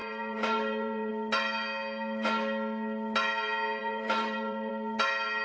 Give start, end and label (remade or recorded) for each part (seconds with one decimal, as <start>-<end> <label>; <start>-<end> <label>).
0.0-1.1 remade; 1.1-3.8 recorded; 3.8-4.7 remade; 4.7-5.4 recorded